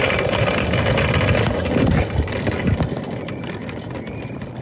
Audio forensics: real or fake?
fake